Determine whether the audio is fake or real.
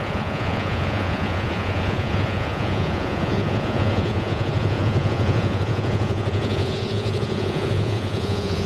fake